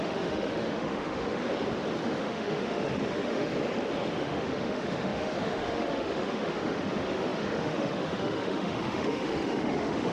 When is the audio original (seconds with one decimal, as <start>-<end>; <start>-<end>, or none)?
1.4-2.0; 3.5-4.1